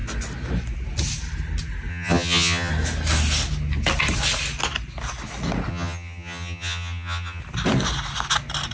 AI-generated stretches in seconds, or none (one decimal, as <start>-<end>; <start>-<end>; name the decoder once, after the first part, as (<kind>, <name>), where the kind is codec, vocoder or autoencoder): 1.9-2.7 (vocoder, HiFi-GAN); 5.7-7.4